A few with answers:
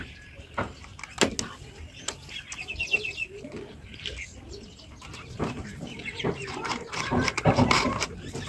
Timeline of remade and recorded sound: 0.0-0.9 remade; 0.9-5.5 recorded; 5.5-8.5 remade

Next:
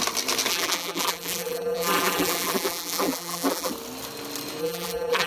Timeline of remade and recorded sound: 0.0-0.5 recorded; 0.5-3.7 remade; 3.7-4.6 recorded; 4.6-5.3 remade

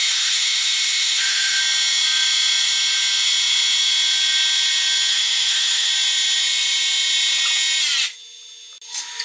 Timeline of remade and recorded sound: 0.0-1.6 remade; 1.6-5.1 recorded; 5.1-5.9 remade; 5.9-9.2 recorded

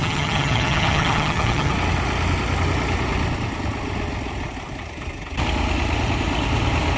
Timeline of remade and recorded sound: 0.0-1.7 remade; 1.7-7.0 recorded

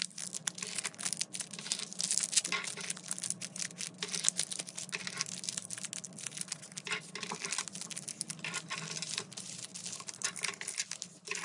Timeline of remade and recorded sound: 0.0-11.4 recorded